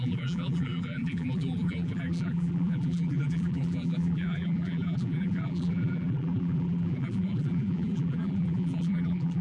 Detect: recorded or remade remade